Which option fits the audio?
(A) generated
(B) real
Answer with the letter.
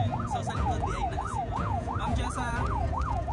A